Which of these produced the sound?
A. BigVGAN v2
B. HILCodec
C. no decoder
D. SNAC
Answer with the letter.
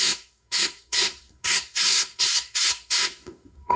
D